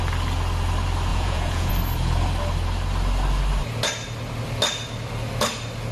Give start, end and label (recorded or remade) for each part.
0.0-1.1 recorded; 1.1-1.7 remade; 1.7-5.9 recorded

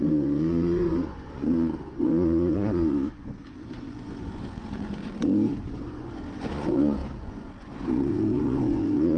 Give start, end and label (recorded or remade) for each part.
0.0-9.2 remade

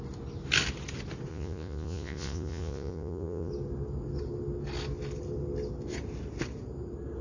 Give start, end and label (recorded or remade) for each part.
0.0-1.3 recorded; 1.3-3.5 remade; 3.5-7.2 recorded

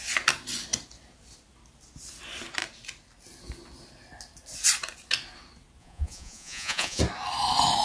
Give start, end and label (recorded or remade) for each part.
0.0-5.8 recorded; 5.8-7.0 remade; 7.0-7.8 recorded